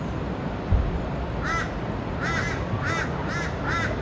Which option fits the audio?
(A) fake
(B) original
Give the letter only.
B